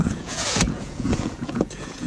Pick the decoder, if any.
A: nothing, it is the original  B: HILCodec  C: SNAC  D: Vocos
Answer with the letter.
D